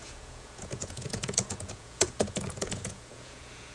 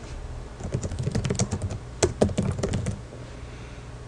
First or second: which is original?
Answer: second